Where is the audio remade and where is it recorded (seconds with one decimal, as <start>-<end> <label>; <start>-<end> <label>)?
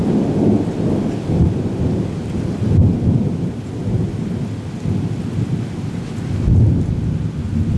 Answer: 0.0-7.8 recorded